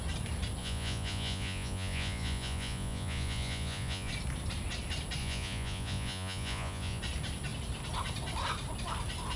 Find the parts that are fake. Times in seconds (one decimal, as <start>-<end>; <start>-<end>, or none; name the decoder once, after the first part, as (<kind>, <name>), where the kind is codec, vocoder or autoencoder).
0.6-4.1 (vocoder, Vocos); 5.2-7.0